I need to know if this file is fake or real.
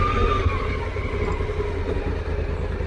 real